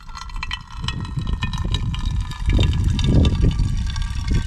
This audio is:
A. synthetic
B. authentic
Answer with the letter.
B